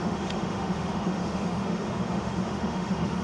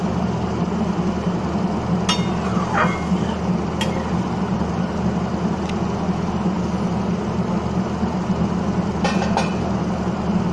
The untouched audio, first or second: second